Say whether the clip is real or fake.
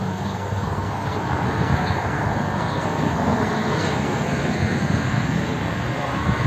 fake